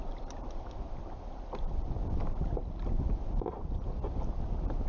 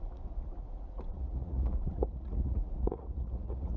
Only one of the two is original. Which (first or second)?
first